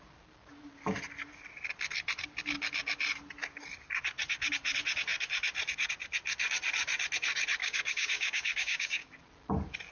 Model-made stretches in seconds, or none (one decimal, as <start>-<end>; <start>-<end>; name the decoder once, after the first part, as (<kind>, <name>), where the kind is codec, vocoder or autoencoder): 7.6-9.1 (codec, DAC)